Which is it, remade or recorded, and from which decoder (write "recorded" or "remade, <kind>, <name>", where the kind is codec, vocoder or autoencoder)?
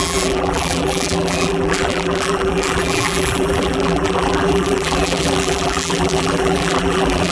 remade, vocoder, BigVGAN v2